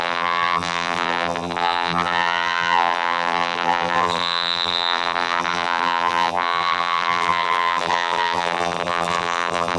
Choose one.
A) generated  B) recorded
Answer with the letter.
A